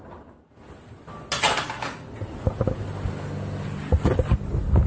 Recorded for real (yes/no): yes